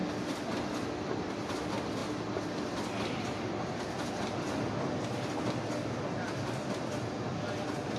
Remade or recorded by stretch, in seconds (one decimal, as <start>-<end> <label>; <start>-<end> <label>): 0.0-8.0 recorded